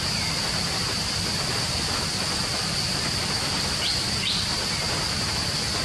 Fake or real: real